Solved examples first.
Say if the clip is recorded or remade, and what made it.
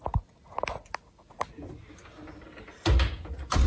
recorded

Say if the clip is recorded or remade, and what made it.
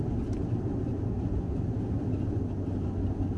recorded